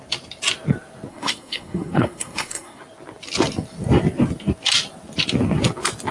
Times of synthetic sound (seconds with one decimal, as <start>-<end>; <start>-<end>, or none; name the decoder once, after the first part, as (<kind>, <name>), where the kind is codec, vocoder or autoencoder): 1.1-2.8 (codec, SNAC)